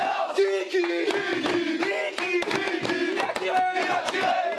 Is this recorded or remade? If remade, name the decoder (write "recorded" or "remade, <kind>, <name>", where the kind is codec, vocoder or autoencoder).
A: recorded